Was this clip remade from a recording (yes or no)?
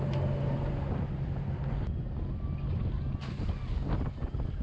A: no